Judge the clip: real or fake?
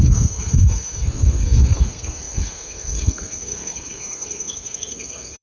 fake